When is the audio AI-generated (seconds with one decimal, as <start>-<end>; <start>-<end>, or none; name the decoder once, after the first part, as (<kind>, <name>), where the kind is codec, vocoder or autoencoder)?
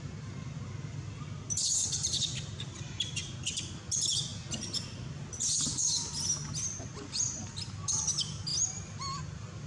0.0-4.3 (vocoder, BigVGAN v2); 6.8-9.7